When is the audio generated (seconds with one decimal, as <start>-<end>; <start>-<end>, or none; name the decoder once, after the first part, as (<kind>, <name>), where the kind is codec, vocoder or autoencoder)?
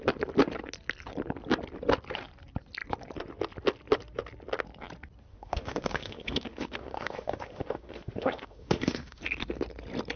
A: 5.3-9.2 (autoencoder, DAC-VAE)